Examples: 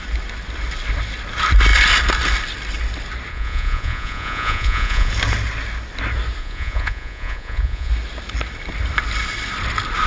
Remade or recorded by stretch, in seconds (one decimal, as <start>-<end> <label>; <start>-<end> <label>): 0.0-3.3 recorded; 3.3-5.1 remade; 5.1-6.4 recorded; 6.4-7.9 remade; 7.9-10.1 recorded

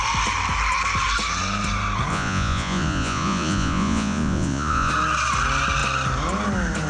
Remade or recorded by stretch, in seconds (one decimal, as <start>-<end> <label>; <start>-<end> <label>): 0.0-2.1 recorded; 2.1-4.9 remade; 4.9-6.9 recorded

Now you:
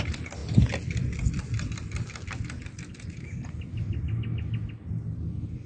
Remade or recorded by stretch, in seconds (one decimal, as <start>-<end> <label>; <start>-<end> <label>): 0.0-5.7 recorded